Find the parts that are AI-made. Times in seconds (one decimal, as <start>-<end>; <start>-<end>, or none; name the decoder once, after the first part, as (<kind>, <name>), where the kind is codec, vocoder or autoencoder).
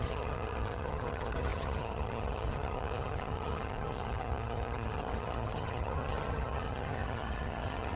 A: 0.0-8.0 (vocoder, HiFi-GAN)